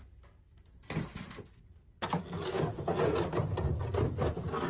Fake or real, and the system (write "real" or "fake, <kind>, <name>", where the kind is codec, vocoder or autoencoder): real